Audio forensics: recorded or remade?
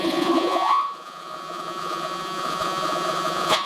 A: remade